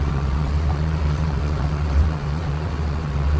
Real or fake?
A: fake